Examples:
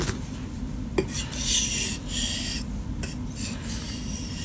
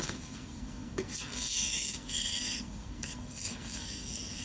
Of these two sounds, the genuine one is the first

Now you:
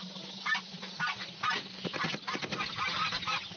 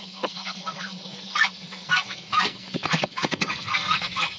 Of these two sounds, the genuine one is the first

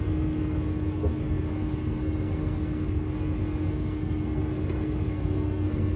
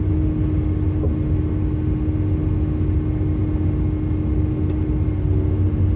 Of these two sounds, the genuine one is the second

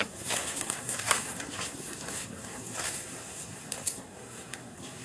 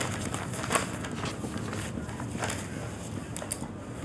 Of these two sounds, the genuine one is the second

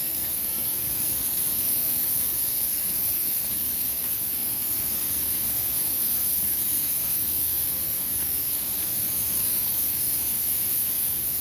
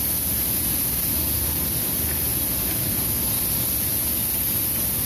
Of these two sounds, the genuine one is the second